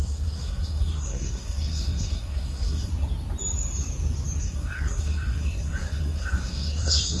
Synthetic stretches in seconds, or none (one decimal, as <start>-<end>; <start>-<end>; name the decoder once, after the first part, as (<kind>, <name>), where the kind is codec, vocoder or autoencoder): 0.0-2.9 (codec, SNAC); 4.4-7.2